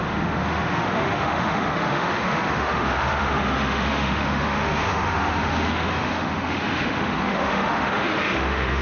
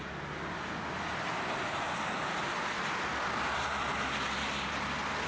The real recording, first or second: second